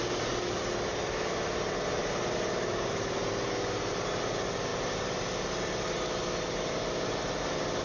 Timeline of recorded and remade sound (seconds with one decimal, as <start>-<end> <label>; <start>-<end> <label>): 0.0-7.8 recorded